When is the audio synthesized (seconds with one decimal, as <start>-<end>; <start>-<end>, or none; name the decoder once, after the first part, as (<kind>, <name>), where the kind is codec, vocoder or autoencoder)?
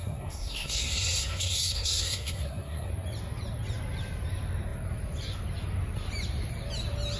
0.0-2.9 (codec, SNAC)